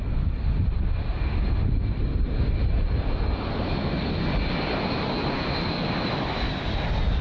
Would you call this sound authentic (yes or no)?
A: yes